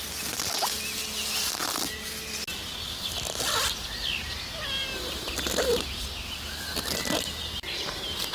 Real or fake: real